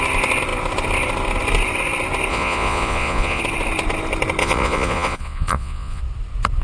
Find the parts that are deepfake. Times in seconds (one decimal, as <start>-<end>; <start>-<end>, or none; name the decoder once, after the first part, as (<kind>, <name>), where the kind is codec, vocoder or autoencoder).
2.3-3.4 (vocoder, Vocos); 4.4-6.0